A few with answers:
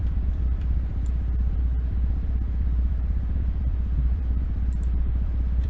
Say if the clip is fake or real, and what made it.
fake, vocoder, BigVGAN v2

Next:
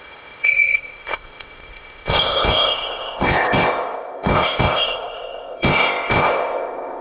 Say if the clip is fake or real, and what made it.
fake, codec, ZipCodec